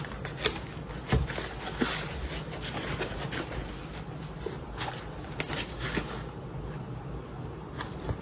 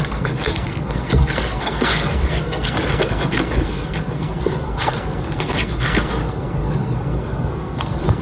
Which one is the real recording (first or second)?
first